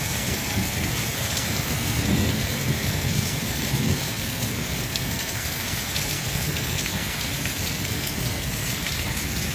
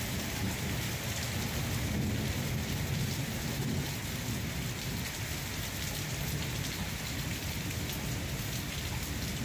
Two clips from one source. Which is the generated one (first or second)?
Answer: first